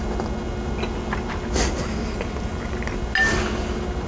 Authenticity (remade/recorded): recorded